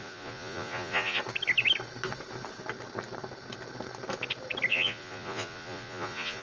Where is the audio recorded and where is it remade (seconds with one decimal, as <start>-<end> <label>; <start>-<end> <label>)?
0.0-1.2 remade; 1.2-4.7 recorded; 4.7-6.4 remade